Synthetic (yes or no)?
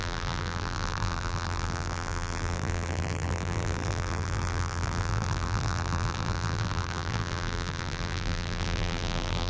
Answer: yes